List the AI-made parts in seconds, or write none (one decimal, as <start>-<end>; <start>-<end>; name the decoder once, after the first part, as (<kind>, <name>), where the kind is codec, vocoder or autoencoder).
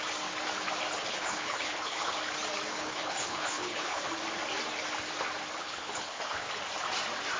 1.0-2.2 (codec, HILCodec); 2.7-4.1; 5.6-6.5